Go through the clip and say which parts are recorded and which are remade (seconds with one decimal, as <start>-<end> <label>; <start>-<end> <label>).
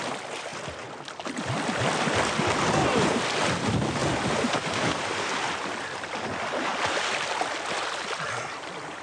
0.0-9.0 recorded